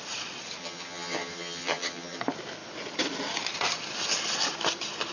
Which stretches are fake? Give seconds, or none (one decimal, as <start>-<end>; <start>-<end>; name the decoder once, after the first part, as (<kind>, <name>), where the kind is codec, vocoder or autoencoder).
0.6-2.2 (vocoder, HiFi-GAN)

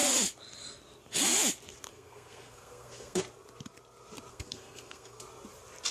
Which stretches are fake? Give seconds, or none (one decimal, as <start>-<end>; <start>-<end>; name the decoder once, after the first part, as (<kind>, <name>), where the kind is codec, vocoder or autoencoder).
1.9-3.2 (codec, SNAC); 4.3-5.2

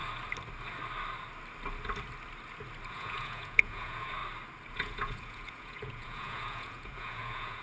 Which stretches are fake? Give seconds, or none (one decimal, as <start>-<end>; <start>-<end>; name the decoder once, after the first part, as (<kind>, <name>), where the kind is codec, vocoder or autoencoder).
2.9-4.2 (vocoder, Vocos); 4.7-7.6